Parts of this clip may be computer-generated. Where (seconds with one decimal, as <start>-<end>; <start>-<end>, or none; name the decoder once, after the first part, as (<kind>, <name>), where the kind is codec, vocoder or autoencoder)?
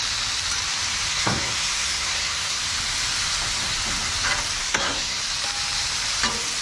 1.1-2.6 (codec, SNAC); 4.6-5.2